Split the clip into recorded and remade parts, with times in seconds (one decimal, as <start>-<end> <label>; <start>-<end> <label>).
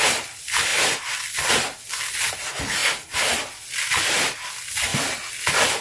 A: 0.0-0.7 recorded; 0.7-1.5 remade; 1.5-2.8 recorded; 2.8-4.5 remade; 4.5-4.9 recorded; 4.9-5.8 remade